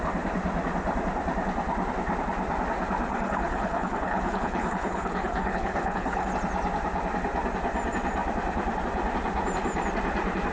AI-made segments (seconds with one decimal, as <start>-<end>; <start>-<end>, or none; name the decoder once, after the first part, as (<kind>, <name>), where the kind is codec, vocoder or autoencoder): 3.1-6.3 (codec, HILCodec)